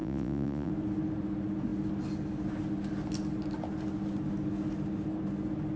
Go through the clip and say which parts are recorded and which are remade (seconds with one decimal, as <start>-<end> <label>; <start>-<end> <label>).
0.0-0.7 remade; 0.7-5.8 recorded